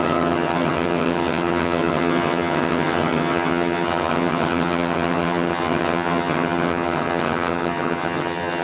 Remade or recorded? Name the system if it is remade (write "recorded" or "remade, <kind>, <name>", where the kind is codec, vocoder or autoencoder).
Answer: remade, vocoder, HiFi-GAN